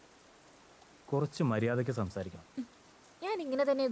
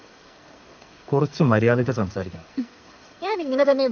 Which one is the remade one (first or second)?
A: second